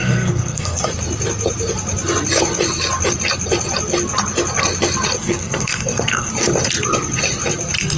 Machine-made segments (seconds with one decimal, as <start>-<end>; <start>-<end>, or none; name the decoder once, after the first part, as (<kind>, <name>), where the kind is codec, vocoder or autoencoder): 0.0-0.8 (codec, SNAC); 5.2-6.3